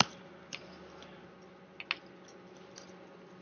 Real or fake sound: real